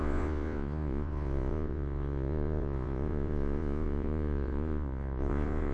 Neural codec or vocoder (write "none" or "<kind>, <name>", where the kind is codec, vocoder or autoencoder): vocoder, Vocos